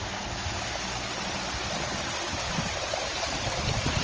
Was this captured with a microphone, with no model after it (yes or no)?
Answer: yes